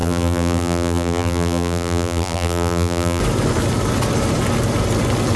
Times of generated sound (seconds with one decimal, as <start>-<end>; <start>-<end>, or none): 0.0-3.2